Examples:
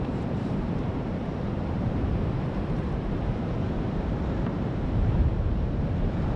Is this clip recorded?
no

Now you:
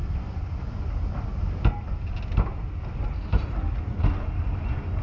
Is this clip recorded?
yes